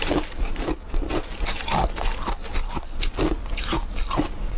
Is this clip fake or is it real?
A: real